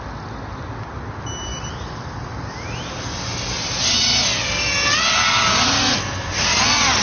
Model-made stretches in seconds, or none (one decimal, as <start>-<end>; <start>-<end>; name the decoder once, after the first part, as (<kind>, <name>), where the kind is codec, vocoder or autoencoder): none